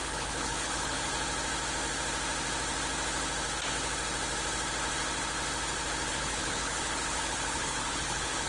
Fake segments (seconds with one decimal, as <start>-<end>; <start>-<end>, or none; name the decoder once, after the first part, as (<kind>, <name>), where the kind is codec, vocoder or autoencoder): 0.0-1.1 (codec, HILCodec); 6.1-8.5